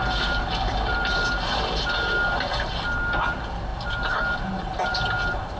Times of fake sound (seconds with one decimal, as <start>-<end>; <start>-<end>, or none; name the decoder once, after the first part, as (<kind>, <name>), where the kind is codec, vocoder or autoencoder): none